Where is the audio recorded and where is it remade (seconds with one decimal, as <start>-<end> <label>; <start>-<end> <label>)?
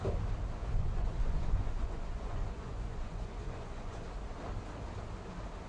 0.0-0.6 recorded; 0.6-4.0 remade; 4.0-5.7 recorded